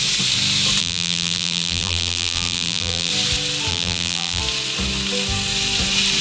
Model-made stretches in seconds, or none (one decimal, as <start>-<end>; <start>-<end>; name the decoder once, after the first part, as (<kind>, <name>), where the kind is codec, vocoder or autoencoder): 0.8-3.1 (vocoder, BigVGAN v2); 3.7-4.4